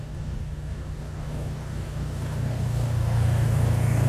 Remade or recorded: remade